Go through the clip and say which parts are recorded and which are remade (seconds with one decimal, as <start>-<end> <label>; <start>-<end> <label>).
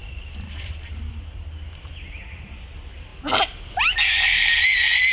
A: 0.0-1.9 remade; 1.9-3.1 recorded; 3.1-4.6 remade; 4.6-5.1 recorded